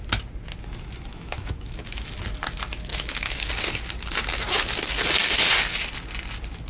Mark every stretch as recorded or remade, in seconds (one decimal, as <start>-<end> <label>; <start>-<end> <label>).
0.0-1.1 recorded; 1.1-2.1 remade; 2.1-2.9 recorded; 2.9-3.5 remade; 3.5-6.7 recorded